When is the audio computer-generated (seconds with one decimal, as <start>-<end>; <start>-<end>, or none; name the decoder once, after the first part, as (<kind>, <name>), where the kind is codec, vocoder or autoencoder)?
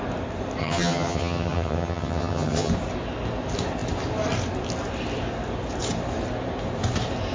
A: 0.6-2.7 (vocoder, HiFi-GAN)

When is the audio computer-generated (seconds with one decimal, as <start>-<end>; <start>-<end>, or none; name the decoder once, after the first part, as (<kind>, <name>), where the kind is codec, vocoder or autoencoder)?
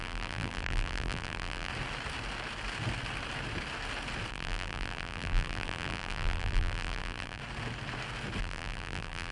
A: 0.0-1.7 (vocoder, BigVGAN v2); 4.3-7.4; 8.4-9.3